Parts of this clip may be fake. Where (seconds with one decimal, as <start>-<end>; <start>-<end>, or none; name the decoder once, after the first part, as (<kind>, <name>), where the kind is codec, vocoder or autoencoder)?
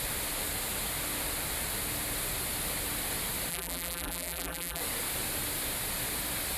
3.5-4.8 (vocoder, BigVGAN v2)